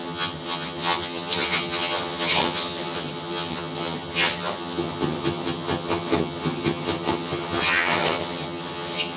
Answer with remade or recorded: remade